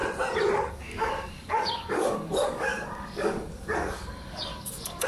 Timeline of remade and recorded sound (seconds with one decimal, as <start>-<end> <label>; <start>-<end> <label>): 0.0-0.7 recorded; 0.7-5.1 remade